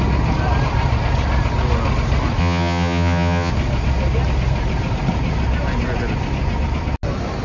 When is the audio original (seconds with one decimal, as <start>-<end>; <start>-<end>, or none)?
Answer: 0.0-2.4; 3.5-7.4